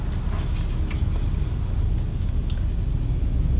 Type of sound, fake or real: real